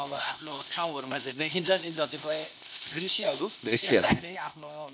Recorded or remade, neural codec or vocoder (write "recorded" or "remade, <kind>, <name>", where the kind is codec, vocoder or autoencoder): remade, codec, ZipCodec